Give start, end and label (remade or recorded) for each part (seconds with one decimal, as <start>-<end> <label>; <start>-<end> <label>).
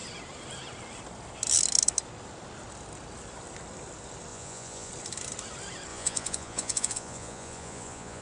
0.0-4.3 recorded; 4.3-4.9 remade; 4.9-5.9 recorded; 5.9-8.2 remade